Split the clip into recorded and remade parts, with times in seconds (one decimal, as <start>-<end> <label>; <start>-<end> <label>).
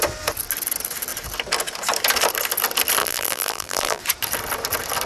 0.0-3.0 recorded; 3.0-4.0 remade; 4.0-5.1 recorded